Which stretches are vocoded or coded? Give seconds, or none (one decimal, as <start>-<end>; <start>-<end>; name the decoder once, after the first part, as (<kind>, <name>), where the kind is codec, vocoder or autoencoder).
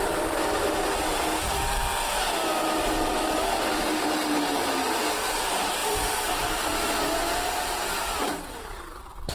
0.0-1.9 (vocoder, BigVGAN v2); 5.1-9.3